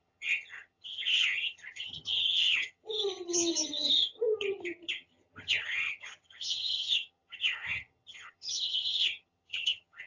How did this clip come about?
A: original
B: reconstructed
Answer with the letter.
B